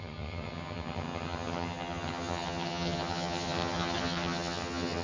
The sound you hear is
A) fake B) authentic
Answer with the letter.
A